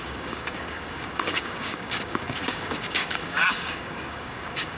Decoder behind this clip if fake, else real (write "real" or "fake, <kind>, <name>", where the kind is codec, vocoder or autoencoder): fake, codec, DAC